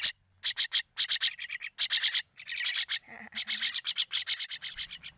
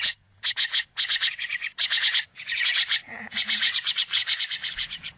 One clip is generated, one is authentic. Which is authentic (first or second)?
first